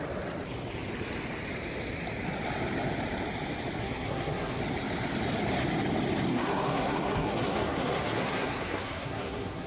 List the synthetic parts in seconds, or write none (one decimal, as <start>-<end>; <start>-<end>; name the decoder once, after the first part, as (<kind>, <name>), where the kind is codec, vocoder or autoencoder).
3.8-4.6 (codec, SNAC); 6.3-9.7